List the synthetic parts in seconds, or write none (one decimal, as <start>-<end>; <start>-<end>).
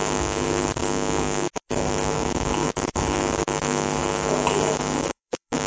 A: 0.0-5.7